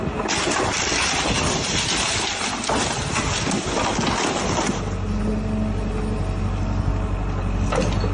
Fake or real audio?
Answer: real